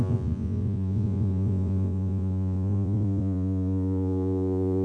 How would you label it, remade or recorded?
remade